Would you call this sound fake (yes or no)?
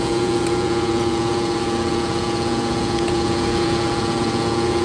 yes